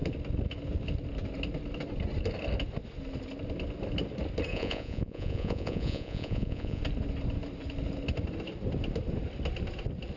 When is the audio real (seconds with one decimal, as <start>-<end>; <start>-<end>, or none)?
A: 0.0-4.5; 6.8-10.2